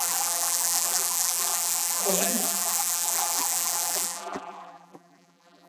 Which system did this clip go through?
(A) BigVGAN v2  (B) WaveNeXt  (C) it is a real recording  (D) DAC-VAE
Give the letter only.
A